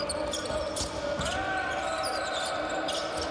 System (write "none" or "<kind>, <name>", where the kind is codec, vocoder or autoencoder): none